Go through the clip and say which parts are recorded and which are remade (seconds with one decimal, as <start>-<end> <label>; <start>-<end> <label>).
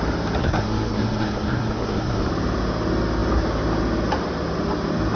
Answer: 0.0-0.4 recorded; 0.4-2.3 remade; 2.3-5.2 recorded